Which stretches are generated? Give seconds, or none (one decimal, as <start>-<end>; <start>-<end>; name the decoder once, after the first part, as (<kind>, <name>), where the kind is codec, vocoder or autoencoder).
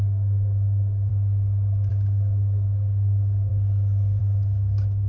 0.0-1.1 (codec, DAC); 1.9-3.5; 4.2-5.1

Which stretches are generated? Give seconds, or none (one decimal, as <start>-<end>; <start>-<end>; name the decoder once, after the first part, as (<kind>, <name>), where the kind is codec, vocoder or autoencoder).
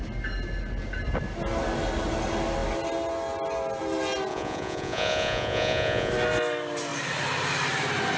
4.3-6.1 (vocoder, Vocos)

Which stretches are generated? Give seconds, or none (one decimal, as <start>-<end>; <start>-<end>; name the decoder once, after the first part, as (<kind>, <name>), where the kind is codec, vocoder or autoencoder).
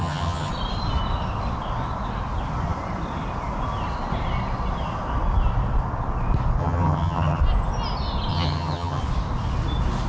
0.0-0.5 (vocoder, HiFi-GAN); 6.6-7.4; 8.3-9.0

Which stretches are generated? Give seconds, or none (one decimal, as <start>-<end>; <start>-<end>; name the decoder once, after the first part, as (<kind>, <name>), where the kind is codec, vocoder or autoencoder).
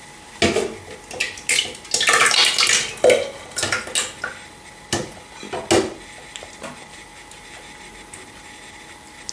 none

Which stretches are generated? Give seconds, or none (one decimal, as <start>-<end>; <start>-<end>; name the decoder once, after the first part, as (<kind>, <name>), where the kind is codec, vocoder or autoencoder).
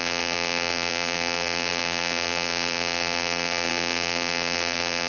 0.0-5.1 (vocoder, BigVGAN v2)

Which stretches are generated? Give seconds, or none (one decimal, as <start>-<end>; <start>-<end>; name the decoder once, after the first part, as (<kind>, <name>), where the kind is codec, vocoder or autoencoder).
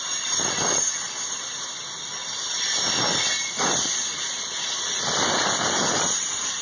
1.2-1.8 (vocoder, BigVGAN v2); 2.2-5.0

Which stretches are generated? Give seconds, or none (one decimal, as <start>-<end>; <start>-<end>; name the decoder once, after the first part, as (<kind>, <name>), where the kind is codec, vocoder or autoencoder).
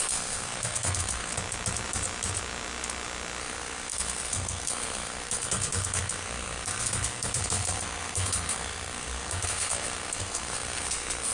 0.0-1.3 (codec, SNAC); 3.4-11.3